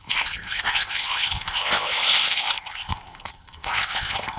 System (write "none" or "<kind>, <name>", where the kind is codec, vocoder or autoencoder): codec, ZipCodec